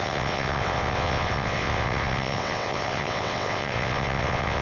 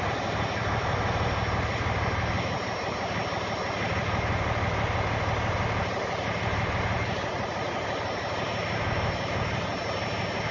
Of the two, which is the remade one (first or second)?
first